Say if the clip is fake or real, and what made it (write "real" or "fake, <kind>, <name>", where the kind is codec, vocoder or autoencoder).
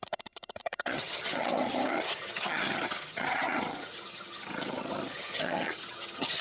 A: fake, vocoder, HiFi-GAN